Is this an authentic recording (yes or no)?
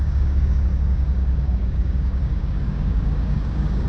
no